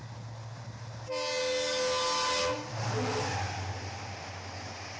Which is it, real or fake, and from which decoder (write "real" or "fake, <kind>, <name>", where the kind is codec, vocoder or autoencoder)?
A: real